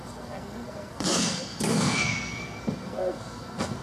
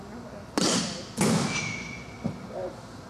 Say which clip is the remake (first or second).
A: first